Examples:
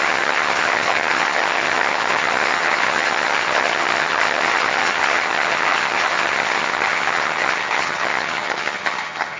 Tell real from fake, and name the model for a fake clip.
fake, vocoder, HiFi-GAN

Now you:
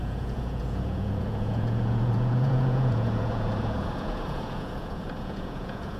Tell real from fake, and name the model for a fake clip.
fake, vocoder, Vocos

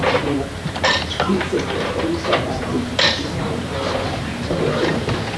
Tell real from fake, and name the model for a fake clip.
fake, vocoder, BigVGAN v2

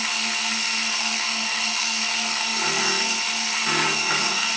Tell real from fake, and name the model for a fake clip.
fake, codec, SNAC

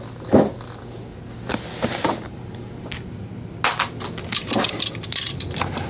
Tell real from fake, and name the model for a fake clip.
real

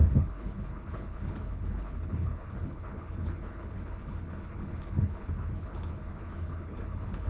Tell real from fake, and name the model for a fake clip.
fake, codec, HILCodec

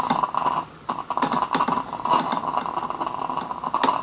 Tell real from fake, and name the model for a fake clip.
real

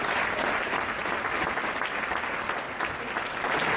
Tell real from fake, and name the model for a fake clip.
real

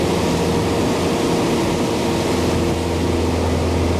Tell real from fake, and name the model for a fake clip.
real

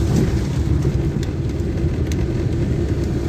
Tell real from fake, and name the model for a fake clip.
real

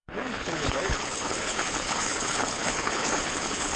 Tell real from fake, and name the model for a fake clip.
fake, codec, HILCodec